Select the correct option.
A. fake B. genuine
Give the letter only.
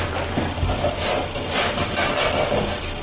B